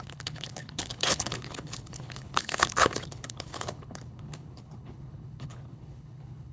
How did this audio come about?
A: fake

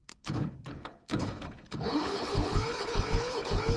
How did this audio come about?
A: fake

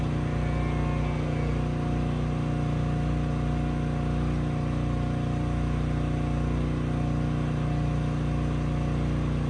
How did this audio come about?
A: real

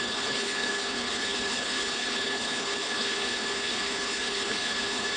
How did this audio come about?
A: fake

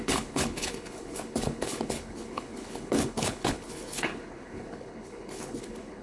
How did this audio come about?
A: fake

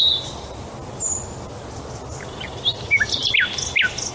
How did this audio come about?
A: real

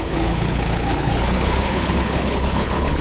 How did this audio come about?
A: fake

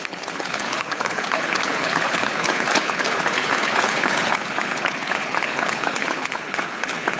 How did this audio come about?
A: fake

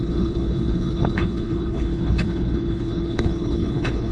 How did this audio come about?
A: fake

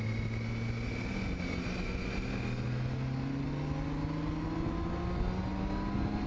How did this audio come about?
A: real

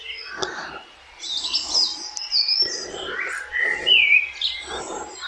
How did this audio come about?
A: real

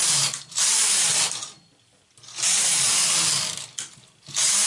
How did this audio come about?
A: real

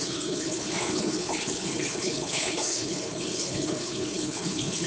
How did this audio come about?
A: fake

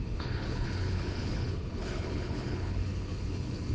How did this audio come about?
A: fake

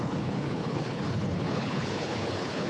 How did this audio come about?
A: fake